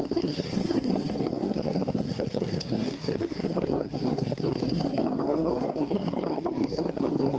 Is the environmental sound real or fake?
fake